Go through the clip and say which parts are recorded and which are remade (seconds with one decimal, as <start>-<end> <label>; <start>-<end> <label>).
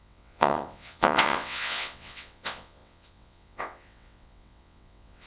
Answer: 0.0-5.3 remade